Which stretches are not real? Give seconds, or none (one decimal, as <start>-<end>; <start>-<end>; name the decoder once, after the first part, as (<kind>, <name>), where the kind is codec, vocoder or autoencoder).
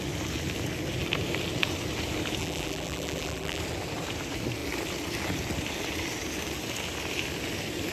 2.4-3.6 (vocoder, BigVGAN v2)